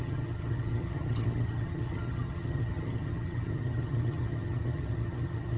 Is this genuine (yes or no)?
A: no